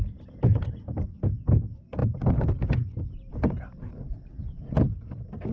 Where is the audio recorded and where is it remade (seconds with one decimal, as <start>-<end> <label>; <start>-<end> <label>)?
0.0-5.5 recorded